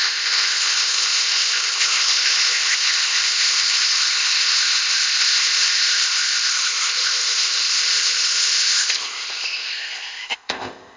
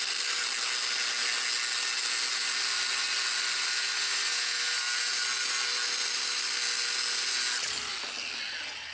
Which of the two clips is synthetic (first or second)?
first